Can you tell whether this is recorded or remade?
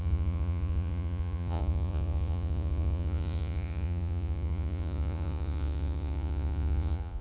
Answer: remade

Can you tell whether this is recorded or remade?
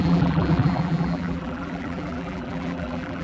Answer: remade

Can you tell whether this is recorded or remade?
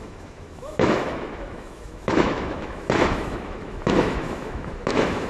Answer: remade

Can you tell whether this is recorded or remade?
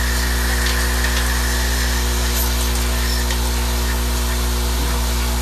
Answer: recorded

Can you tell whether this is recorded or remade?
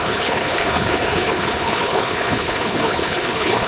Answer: remade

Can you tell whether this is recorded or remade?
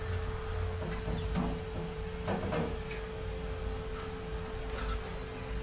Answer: recorded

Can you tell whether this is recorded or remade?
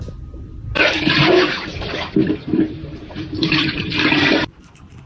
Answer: remade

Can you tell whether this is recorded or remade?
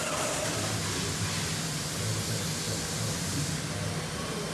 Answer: recorded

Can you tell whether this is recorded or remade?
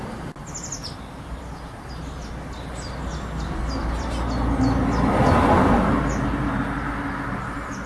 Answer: recorded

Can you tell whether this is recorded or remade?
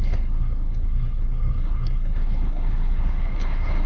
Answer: remade